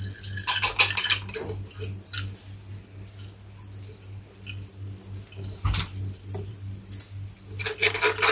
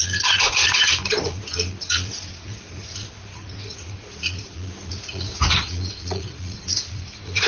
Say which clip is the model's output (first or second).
second